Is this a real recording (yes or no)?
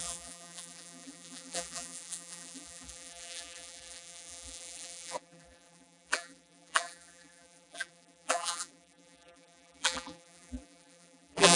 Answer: no